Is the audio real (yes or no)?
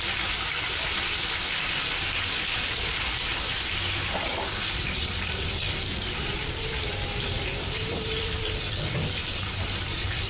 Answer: no